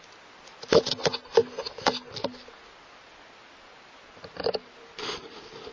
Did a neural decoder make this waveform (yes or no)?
no